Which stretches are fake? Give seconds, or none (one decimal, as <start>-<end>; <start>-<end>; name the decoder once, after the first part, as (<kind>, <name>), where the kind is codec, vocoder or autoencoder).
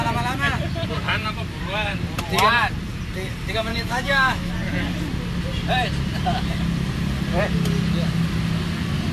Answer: 3.7-4.5 (autoencoder, DAC-VAE)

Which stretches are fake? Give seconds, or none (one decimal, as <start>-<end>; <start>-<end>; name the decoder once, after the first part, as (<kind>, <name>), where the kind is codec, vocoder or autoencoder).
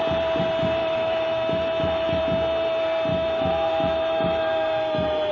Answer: 0.8-2.2 (autoencoder, DAC-VAE); 3.1-5.3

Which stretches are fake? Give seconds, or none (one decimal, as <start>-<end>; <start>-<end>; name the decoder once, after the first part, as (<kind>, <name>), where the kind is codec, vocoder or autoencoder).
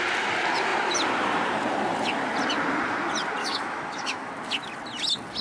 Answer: 3.4-4.3 (autoencoder, DAC-VAE)